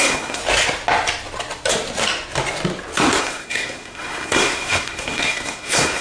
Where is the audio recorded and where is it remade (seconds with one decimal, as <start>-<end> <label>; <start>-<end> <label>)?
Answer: 0.0-0.4 remade; 0.4-3.2 recorded; 3.2-6.0 remade